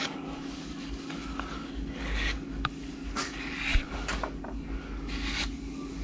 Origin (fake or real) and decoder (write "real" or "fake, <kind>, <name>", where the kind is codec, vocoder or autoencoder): fake, codec, DAC